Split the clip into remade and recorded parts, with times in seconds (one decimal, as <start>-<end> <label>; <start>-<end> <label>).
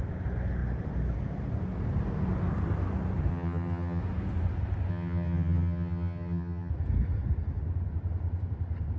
0.0-3.3 recorded; 3.3-4.0 remade; 4.0-4.9 recorded; 4.9-6.7 remade; 6.7-9.0 recorded